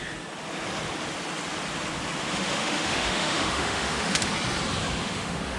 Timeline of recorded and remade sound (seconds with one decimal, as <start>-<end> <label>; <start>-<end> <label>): 0.0-2.3 recorded; 2.3-4.3 remade; 4.3-5.0 recorded; 5.0-5.6 remade